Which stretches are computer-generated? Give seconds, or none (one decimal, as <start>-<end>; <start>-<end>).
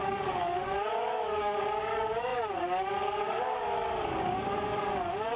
0.0-5.4